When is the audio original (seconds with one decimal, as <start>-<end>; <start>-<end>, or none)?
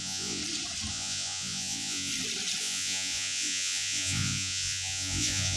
0.4-0.9; 2.1-2.6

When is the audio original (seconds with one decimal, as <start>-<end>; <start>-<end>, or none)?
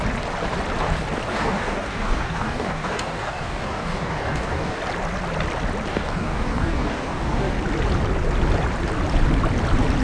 0.0-1.3; 4.8-5.9; 7.6-10.0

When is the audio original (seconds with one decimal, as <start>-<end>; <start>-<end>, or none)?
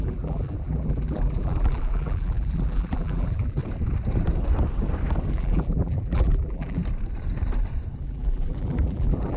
3.6-5.3; 6.8-8.0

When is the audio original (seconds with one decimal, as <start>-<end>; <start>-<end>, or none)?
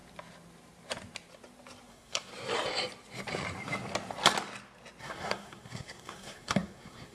0.0-1.9; 2.3-5.0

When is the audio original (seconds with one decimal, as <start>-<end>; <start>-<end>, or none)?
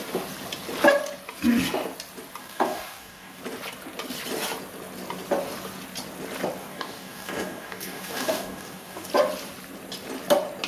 0.0-2.4; 3.4-6.6; 9.1-10.7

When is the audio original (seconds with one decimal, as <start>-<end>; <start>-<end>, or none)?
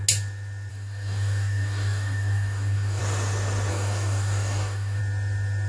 0.0-0.7; 3.0-3.7; 5.0-5.7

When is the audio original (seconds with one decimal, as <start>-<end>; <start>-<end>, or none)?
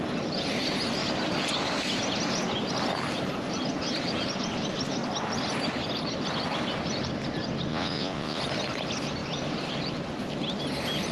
0.0-7.7; 8.4-11.1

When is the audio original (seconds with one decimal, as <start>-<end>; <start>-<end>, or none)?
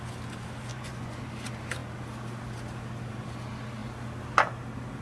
0.0-0.7; 1.2-5.0